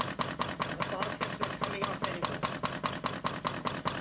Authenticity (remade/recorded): recorded